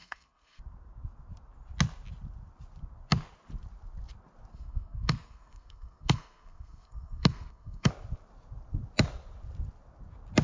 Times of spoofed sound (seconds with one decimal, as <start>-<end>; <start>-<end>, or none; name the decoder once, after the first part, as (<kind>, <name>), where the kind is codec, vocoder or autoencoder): 0.0-0.6 (codec, SNAC); 4.5-7.9